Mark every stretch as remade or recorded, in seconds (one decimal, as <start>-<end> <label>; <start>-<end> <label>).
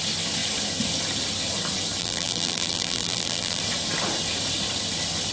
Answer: 0.0-2.0 recorded; 2.0-3.6 remade; 3.6-5.3 recorded